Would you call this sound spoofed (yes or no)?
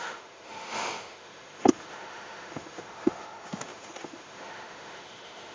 yes